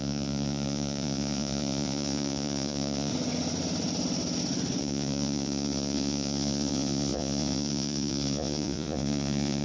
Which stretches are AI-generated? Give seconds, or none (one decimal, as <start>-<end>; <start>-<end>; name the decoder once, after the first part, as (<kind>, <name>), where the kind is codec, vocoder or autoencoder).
0.0-3.1 (vocoder, Vocos); 4.8-9.6